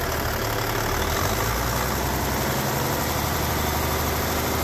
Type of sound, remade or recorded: recorded